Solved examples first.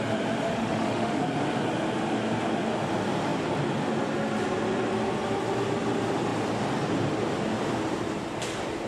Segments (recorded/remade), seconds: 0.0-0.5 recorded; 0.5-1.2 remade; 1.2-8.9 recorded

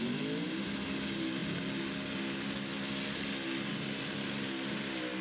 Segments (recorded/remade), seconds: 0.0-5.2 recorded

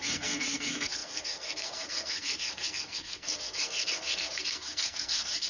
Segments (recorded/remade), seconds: 0.0-5.5 remade

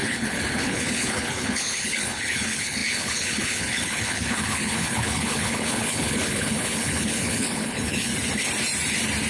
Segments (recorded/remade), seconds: 0.0-8.1 remade; 8.1-9.3 recorded

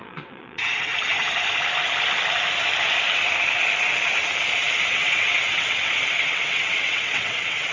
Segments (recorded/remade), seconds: 0.0-0.9 remade; 0.9-4.9 recorded; 4.9-7.7 remade

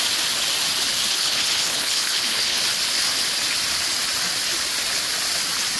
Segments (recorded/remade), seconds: 0.0-1.1 recorded; 1.1-2.6 remade; 2.6-5.8 recorded

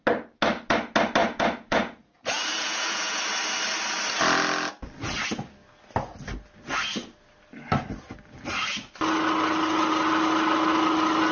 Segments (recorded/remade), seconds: 0.0-1.2 recorded; 1.2-3.2 remade; 3.2-11.3 recorded